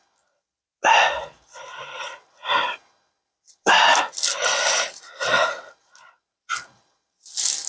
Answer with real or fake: real